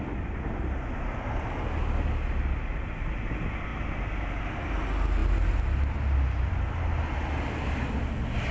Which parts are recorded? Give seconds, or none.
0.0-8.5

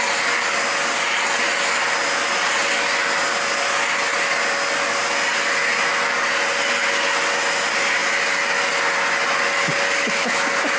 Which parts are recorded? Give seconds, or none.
0.0-10.8

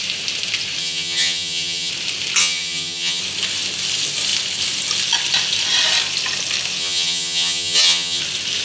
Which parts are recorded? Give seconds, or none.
0.0-0.8; 1.9-2.4; 3.2-6.8; 8.2-8.6

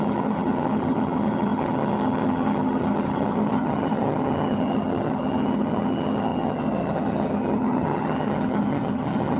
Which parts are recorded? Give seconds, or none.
none

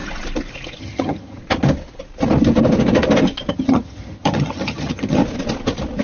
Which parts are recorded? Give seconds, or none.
0.0-0.8; 1.4-3.5; 5.2-6.0

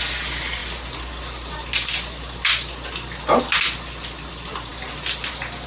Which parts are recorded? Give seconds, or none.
0.0-5.7

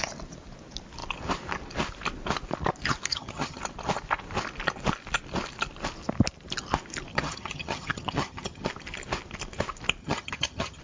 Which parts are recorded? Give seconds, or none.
0.0-3.1; 3.6-7.1; 8.7-10.0

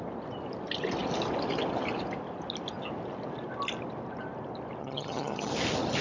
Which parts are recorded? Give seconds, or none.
0.0-4.8; 5.5-6.0